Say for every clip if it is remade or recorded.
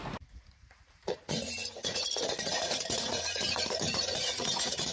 remade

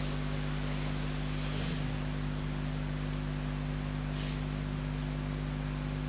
recorded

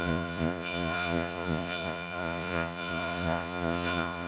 remade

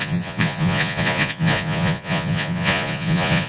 remade